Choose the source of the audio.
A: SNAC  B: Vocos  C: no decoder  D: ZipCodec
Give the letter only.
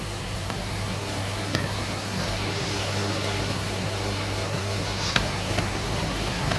A